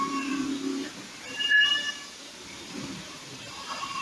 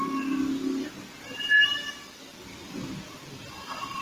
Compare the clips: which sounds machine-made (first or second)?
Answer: first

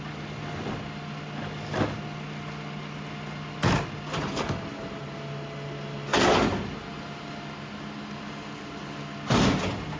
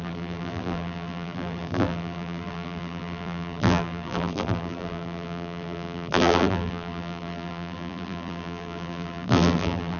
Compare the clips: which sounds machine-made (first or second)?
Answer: second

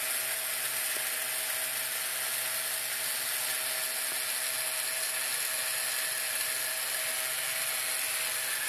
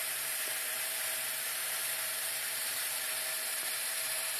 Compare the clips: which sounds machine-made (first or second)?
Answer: second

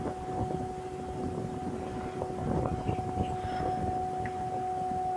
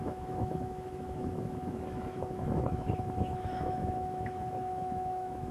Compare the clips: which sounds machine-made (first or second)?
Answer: second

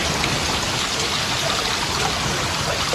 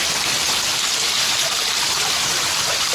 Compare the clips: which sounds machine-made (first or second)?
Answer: second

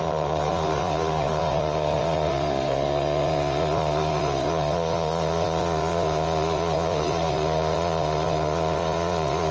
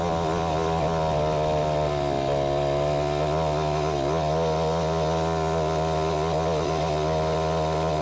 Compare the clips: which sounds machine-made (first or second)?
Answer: first